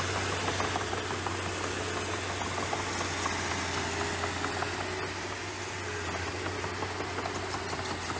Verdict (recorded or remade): recorded